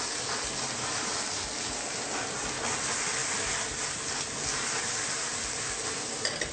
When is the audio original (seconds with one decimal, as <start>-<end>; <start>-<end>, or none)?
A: 0.0-6.5